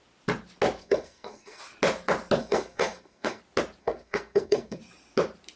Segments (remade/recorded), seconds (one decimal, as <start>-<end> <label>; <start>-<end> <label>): 0.0-0.8 recorded; 0.8-1.6 remade; 1.6-2.4 recorded; 2.4-3.4 remade; 3.4-3.8 recorded; 3.8-4.8 remade; 4.8-5.6 recorded